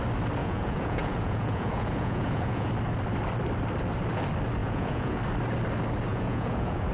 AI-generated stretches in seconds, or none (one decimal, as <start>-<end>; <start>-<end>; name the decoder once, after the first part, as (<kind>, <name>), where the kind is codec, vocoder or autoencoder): 0.4-2.7 (vocoder, Vocos); 4.6-5.2; 6.1-6.9